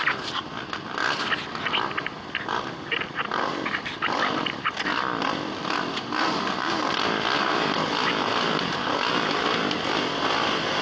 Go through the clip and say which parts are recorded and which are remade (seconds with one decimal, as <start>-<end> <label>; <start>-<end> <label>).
0.0-10.8 recorded